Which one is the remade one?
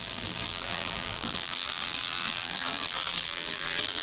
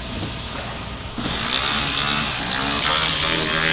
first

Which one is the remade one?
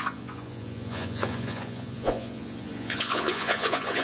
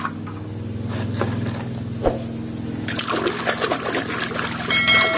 first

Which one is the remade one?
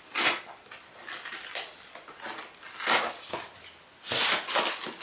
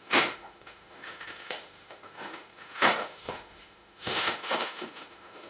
second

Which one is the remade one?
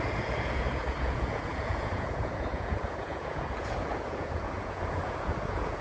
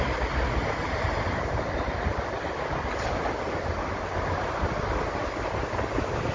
first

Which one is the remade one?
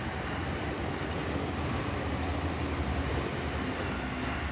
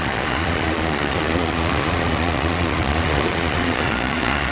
second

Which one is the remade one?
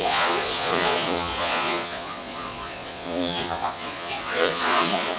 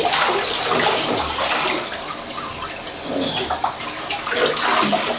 first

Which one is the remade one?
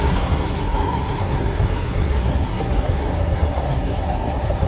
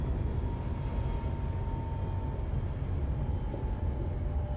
first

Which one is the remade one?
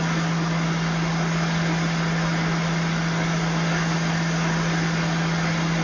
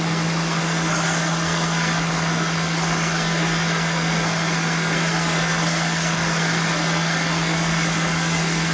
second